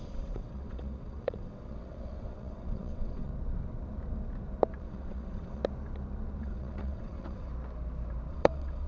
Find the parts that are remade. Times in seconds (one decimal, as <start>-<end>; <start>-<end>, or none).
0.0-3.3; 4.8-5.6; 6.4-7.5; 8.3-8.9